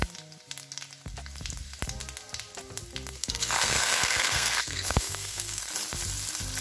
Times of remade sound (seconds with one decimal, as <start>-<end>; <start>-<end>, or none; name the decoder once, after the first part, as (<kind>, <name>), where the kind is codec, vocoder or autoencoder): 3.2-5.6 (codec, SNAC)